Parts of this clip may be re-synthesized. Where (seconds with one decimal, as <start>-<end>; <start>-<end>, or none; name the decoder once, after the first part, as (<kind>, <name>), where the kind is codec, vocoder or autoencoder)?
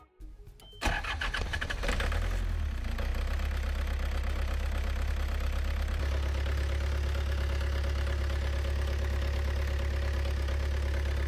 none